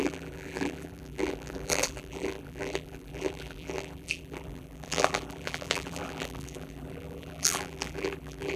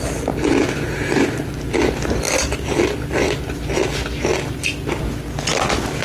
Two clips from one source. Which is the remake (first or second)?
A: first